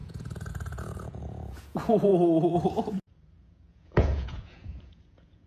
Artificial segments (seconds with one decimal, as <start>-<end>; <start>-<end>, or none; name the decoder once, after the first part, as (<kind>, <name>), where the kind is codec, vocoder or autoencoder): 0.0-2.1 (vocoder, Vocos); 2.9-5.5